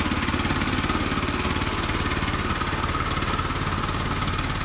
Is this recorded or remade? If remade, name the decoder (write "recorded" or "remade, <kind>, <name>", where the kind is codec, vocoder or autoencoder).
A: recorded